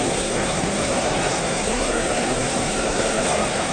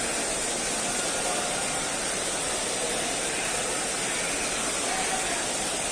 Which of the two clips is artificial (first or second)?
first